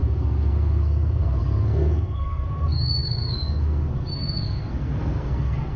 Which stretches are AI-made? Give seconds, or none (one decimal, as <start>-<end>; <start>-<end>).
0.0-5.8